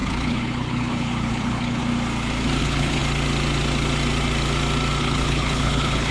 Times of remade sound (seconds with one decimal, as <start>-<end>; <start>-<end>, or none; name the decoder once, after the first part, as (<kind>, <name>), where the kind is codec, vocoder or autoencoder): 0.0-1.8 (codec, HILCodec); 2.6-3.0; 5.0-6.1